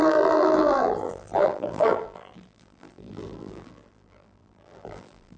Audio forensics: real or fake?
fake